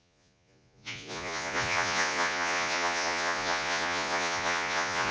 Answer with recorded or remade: remade